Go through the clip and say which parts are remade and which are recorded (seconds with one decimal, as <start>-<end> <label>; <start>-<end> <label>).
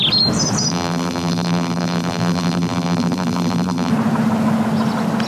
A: 0.0-0.7 recorded; 0.7-3.9 remade; 3.9-5.3 recorded